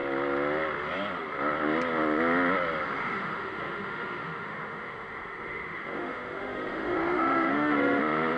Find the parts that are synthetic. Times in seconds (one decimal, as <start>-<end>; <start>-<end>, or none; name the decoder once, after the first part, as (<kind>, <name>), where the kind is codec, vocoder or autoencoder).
3.0-8.0 (autoencoder, DAC-VAE)